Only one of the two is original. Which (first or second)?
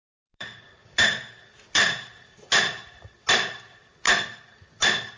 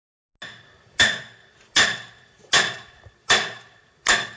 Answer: second